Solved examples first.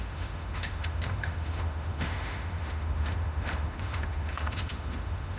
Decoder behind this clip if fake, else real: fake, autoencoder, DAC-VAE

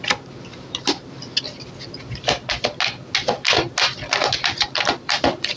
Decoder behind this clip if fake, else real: real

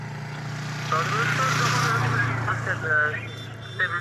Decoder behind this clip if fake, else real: real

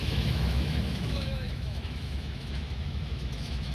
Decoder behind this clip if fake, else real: fake, autoencoder, DAC-VAE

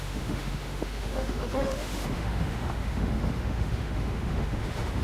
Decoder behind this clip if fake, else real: fake, autoencoder, DAC-VAE